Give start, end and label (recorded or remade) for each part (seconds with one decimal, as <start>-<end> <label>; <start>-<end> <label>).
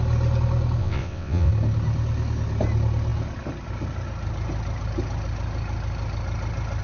0.0-0.8 recorded; 0.8-1.5 remade; 1.5-6.8 recorded